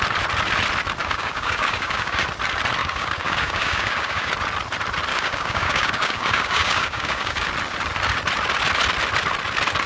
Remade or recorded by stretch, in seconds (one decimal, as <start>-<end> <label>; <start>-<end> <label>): 0.0-1.0 recorded; 1.0-2.2 remade; 2.2-2.8 recorded; 2.8-4.3 remade; 4.3-5.1 recorded; 5.1-7.5 remade; 7.5-9.9 recorded